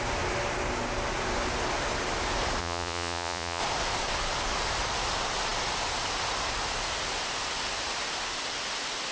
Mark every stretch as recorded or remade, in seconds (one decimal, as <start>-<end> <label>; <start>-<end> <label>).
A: 0.0-2.6 recorded; 2.6-3.6 remade; 3.6-9.1 recorded